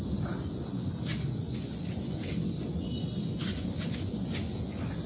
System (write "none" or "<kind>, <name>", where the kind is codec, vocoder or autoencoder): vocoder, Vocos